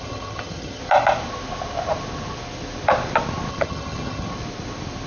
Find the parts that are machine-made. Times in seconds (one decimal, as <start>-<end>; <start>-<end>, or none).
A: 0.0-0.8; 3.5-4.3